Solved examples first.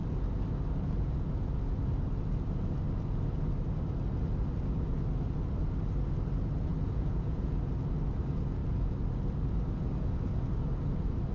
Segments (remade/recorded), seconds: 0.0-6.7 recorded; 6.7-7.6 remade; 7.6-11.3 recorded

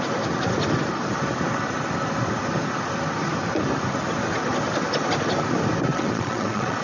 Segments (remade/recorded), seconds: 0.0-5.9 recorded; 5.9-6.8 remade

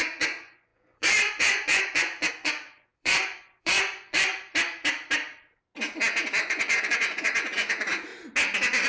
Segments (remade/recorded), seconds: 0.0-4.3 remade; 4.3-6.4 recorded; 6.4-8.1 remade; 8.1-8.9 recorded

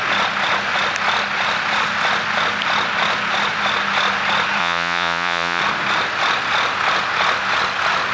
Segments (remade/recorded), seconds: 0.0-4.6 recorded; 4.6-5.6 remade; 5.6-8.1 recorded

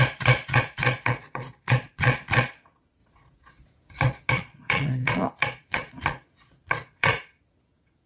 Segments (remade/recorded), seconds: 0.0-8.1 remade

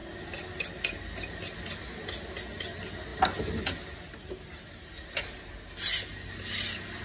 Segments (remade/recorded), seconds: 0.0-7.0 recorded

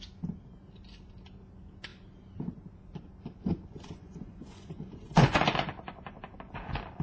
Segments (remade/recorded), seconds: 0.0-3.7 recorded; 3.7-5.4 remade; 5.4-7.0 recorded

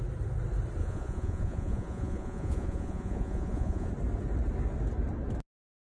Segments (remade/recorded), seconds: 0.0-0.8 recorded; 0.8-3.9 remade; 3.9-6.0 recorded